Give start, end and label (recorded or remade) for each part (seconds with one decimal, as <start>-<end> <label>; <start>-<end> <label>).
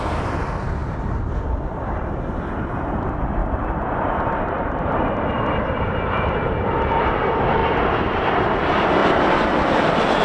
0.0-7.6 remade; 7.6-8.6 recorded; 8.6-10.2 remade